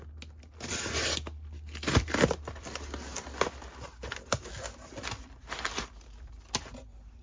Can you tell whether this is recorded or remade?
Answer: recorded